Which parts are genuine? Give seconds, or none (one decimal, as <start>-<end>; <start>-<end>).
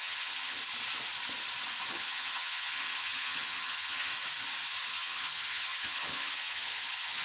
0.6-1.9; 4.1-4.9